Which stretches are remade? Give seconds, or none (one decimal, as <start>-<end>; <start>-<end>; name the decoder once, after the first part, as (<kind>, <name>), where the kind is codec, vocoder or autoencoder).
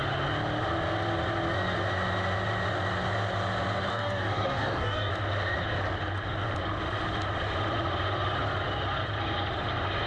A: 3.9-5.1 (codec, DAC)